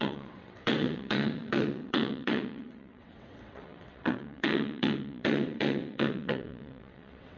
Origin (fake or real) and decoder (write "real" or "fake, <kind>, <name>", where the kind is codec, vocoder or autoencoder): fake, vocoder, WaveNeXt